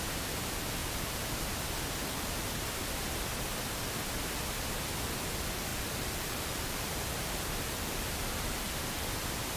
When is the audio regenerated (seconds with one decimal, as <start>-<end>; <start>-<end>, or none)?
0.8-1.3; 2.0-2.7; 5.7-8.6

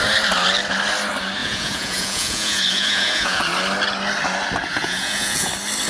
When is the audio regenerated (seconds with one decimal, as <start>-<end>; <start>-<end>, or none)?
1.4-3.4; 4.7-5.5

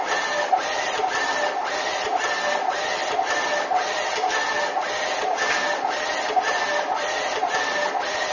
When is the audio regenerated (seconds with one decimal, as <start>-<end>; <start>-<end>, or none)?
none

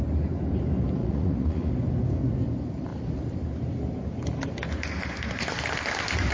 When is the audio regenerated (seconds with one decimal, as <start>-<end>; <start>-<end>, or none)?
1.0-1.7

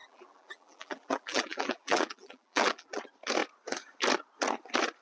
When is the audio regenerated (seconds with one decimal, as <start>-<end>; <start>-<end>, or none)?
0.0-3.0

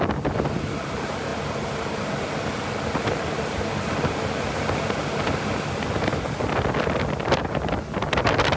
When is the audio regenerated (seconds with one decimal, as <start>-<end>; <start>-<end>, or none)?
none